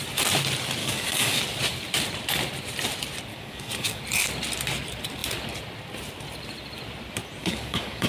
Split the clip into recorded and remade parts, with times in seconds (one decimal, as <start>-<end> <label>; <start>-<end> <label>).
0.0-0.8 recorded; 0.8-1.4 remade; 1.4-3.3 recorded; 3.3-4.0 remade; 4.0-7.4 recorded; 7.4-8.1 remade